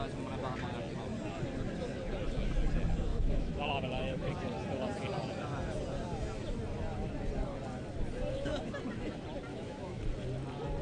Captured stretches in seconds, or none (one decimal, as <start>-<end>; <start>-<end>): 0.0-3.1; 4.3-9.5; 10.0-10.8